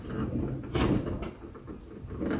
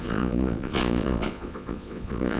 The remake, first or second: second